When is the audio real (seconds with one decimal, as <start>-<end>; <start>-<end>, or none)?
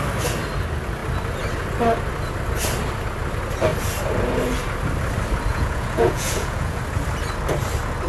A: 0.0-5.5; 6.8-8.1